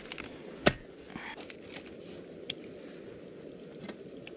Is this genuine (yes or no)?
yes